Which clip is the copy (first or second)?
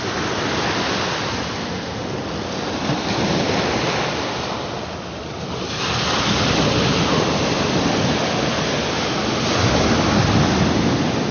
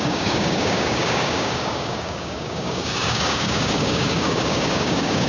second